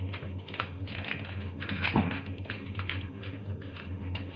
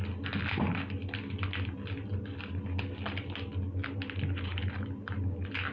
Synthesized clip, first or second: first